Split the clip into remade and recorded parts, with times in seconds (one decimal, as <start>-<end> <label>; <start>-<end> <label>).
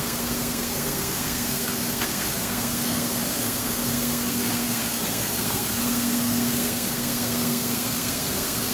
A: 0.0-8.7 remade